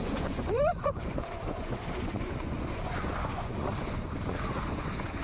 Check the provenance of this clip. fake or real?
fake